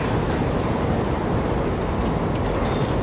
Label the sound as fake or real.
real